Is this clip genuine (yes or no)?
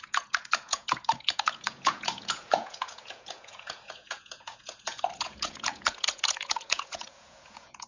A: no